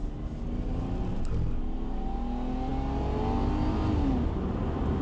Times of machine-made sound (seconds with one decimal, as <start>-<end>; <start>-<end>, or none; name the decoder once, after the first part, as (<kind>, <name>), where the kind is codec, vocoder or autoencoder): none